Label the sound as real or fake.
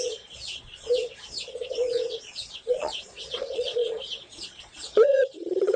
fake